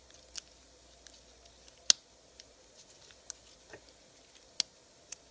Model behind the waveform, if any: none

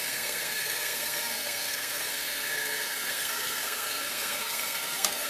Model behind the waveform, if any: codec, SNAC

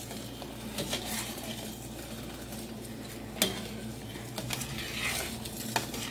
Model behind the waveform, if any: none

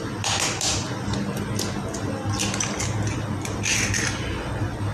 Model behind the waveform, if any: none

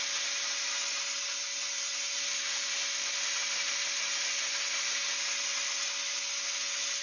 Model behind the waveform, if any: none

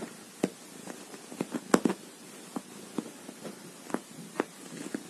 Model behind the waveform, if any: none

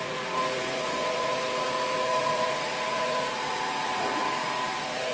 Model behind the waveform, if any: vocoder, Vocos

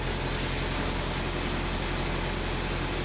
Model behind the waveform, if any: none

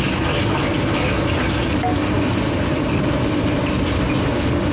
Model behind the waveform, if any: none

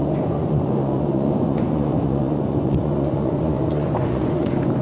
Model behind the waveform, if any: vocoder, Vocos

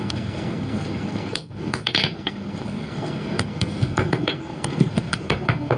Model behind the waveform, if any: codec, SNAC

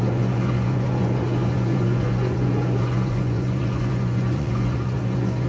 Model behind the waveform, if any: vocoder, Vocos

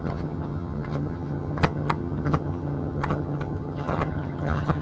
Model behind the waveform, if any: vocoder, HiFi-GAN